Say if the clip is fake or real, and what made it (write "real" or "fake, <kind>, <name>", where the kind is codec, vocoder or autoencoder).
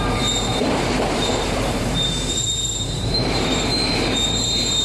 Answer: fake, vocoder, BigVGAN v2